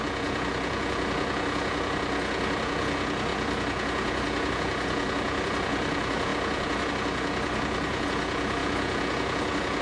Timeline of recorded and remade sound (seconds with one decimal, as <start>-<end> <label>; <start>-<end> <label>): 0.0-9.8 remade